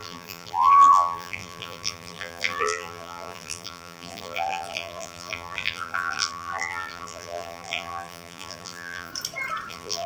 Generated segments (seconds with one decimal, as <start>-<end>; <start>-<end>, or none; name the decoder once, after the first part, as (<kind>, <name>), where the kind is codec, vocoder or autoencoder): 0.0-9.1 (vocoder, BigVGAN v2); 9.7-10.1